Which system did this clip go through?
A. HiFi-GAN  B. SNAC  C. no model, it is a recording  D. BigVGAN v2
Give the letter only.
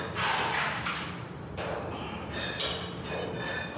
C